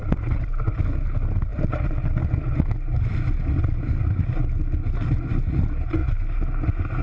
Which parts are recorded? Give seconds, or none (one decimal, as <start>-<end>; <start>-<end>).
0.9-1.5; 3.0-7.0